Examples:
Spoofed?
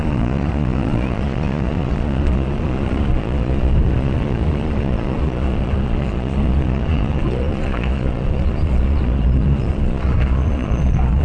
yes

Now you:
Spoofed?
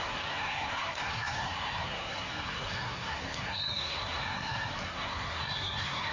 yes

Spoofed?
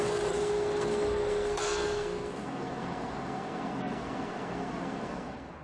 yes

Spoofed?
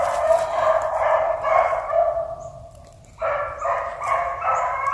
no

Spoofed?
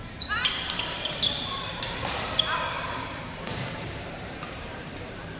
yes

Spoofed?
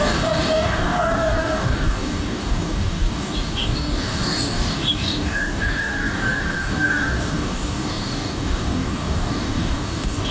yes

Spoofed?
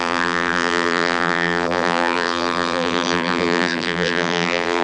yes